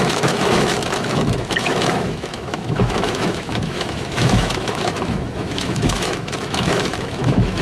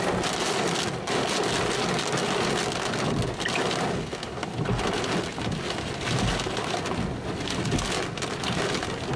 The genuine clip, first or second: second